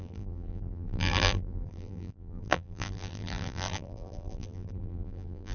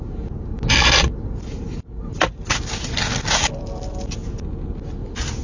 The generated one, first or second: first